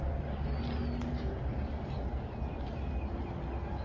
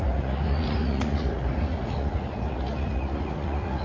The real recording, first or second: first